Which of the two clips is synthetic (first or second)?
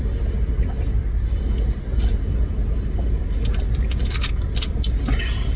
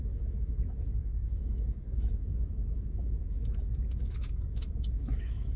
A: second